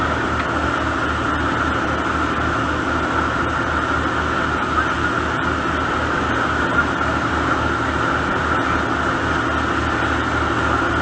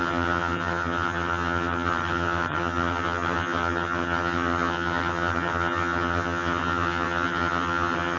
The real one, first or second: first